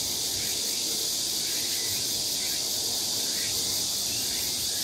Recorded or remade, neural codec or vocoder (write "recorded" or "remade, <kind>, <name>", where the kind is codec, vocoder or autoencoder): recorded